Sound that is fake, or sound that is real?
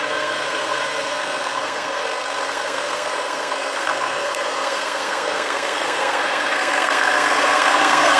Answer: fake